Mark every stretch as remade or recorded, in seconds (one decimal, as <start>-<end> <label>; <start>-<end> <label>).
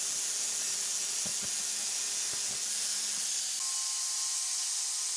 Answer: 0.0-5.2 recorded